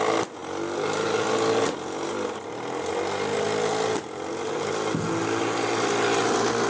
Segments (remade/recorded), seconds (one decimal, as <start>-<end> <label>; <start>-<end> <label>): 0.0-6.7 recorded